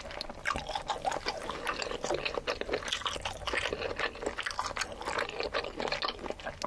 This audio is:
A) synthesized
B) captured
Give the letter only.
B